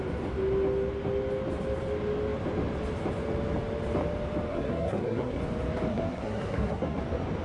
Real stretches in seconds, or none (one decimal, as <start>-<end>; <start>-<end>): 0.0-4.5; 5.4-5.9; 7.0-7.4